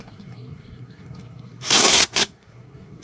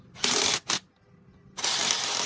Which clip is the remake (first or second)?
first